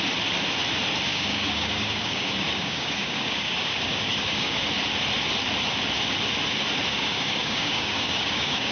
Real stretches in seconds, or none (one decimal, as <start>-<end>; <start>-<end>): 0.0-1.1; 4.6-6.9